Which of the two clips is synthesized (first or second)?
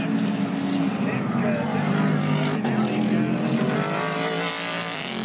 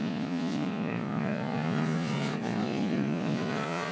second